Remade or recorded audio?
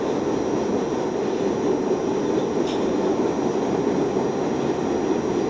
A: recorded